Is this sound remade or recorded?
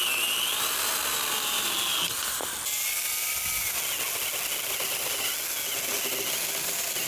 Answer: recorded